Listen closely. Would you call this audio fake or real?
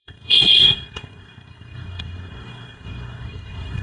fake